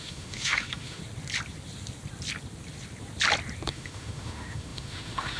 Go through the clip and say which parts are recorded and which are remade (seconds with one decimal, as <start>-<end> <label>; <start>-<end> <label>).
0.0-1.0 remade; 1.0-3.7 recorded; 3.7-5.4 remade